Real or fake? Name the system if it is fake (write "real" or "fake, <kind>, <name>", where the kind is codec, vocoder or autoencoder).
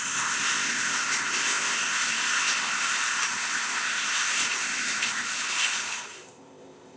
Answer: fake, codec, ZipCodec